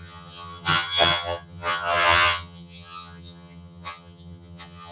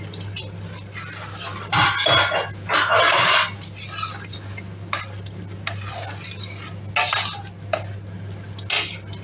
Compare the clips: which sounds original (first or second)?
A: second